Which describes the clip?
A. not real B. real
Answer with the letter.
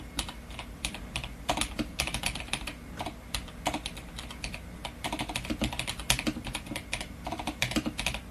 A